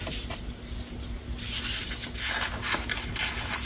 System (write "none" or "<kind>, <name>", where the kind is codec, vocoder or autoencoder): none